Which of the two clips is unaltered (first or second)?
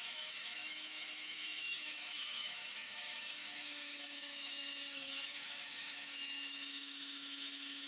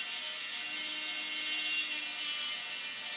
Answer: second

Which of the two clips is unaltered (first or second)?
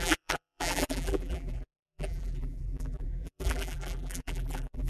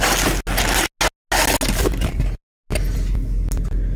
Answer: second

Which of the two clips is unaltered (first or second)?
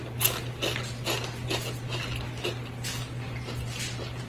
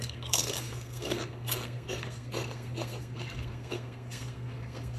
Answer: first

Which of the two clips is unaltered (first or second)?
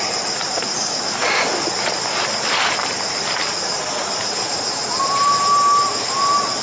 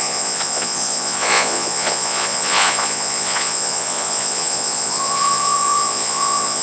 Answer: first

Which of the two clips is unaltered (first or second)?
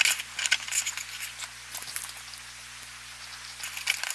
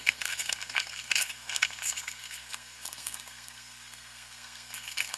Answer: first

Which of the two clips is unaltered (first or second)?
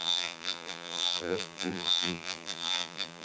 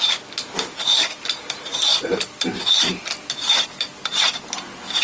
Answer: second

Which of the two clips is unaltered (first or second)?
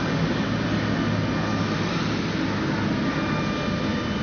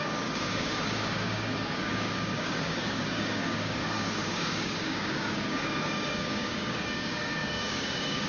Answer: first